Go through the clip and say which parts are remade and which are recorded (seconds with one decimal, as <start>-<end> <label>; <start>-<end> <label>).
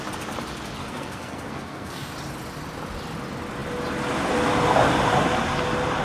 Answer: 0.0-0.8 recorded; 0.8-2.1 remade; 2.1-6.0 recorded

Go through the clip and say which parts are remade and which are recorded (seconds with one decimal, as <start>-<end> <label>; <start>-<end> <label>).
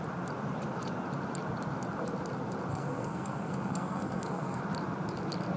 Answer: 0.0-2.7 recorded; 2.7-4.6 remade; 4.6-5.6 recorded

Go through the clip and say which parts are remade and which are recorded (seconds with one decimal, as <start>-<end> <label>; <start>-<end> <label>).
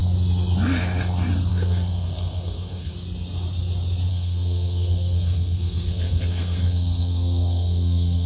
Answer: 0.0-1.5 recorded; 1.5-2.9 remade; 2.9-4.1 recorded; 4.1-8.3 remade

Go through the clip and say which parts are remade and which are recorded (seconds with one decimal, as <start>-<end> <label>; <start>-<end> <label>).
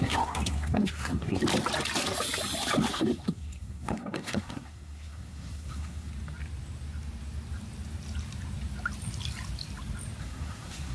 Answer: 0.0-1.4 remade; 1.4-2.9 recorded; 2.9-6.1 remade; 6.1-10.2 recorded; 10.2-10.9 remade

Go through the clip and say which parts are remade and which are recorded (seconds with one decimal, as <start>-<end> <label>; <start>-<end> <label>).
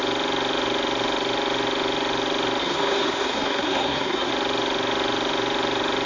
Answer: 0.0-2.6 recorded; 2.6-4.3 remade; 4.3-6.1 recorded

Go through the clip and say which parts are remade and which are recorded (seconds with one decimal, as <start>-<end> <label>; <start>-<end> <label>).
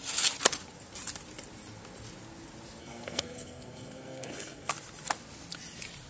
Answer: 0.0-2.8 recorded; 2.8-4.7 remade; 4.7-6.1 recorded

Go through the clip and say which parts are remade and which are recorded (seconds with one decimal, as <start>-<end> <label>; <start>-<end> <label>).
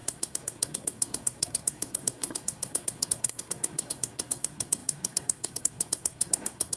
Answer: 0.0-6.8 remade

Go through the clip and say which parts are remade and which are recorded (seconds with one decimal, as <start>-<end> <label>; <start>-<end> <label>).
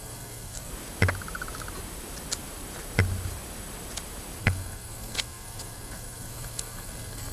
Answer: 0.0-0.7 remade; 0.7-4.4 recorded; 4.4-7.3 remade